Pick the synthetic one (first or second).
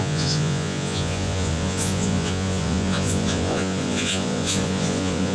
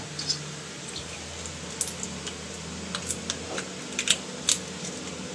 first